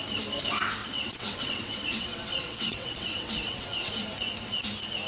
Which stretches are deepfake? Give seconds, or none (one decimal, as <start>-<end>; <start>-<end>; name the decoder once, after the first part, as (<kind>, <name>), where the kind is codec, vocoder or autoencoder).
0.8-3.9 (vocoder, WaveNeXt)